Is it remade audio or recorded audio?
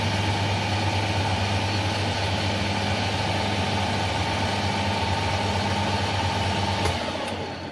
recorded